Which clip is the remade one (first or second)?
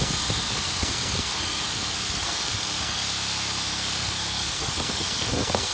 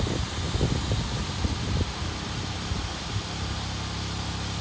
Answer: first